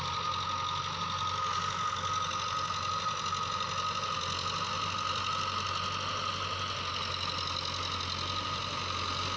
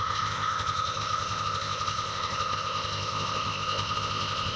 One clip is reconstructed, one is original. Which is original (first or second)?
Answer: first